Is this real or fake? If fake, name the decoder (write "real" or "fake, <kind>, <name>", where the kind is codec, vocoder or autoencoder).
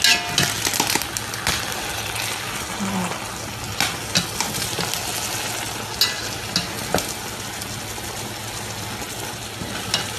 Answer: real